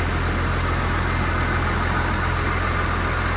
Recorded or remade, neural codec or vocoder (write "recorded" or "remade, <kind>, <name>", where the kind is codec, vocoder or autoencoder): recorded